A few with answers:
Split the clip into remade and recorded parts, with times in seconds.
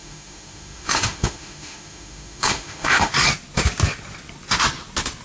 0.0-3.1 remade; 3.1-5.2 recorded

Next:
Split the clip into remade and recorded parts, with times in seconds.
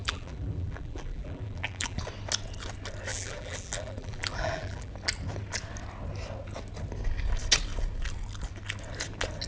0.0-2.0 remade; 2.0-3.1 recorded; 3.1-4.9 remade; 4.9-9.5 recorded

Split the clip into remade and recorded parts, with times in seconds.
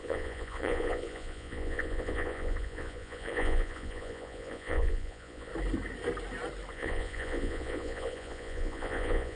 0.0-5.5 remade; 5.5-6.7 recorded; 6.7-9.4 remade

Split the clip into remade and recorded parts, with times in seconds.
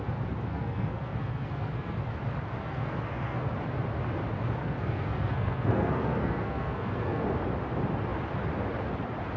0.0-0.5 recorded; 0.5-2.1 remade; 2.1-2.6 recorded; 2.6-3.5 remade; 3.5-4.6 recorded; 4.6-7.2 remade; 7.2-9.4 recorded